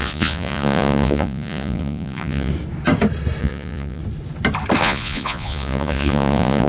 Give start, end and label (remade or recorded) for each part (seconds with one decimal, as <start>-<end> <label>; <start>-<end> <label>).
0.0-2.5 remade; 2.5-3.4 recorded; 3.4-4.0 remade; 4.0-4.8 recorded; 4.8-6.7 remade